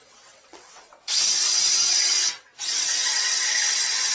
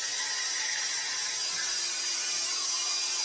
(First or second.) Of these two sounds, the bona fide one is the second